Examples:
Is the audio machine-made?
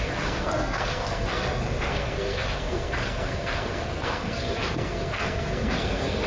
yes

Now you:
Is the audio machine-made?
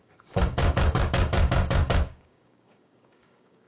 yes